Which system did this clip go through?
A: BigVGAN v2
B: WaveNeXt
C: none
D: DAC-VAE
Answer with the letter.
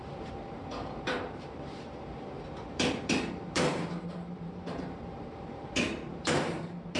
A